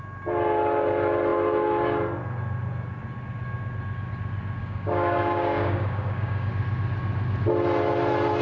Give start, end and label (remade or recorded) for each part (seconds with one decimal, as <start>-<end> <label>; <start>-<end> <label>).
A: 0.0-4.6 recorded; 4.6-6.5 remade; 6.5-8.4 recorded